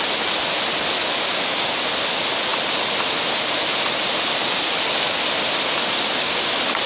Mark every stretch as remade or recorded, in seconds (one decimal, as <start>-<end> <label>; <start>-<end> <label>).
0.0-6.9 recorded